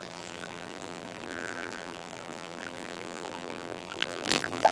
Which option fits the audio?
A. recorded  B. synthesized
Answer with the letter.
B